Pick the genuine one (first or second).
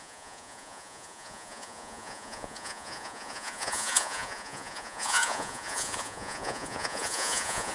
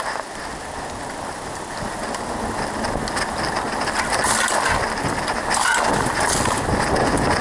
second